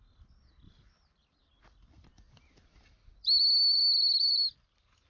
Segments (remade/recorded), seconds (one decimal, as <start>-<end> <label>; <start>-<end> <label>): 0.0-5.1 recorded